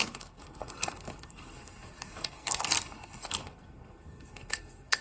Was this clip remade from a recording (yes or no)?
yes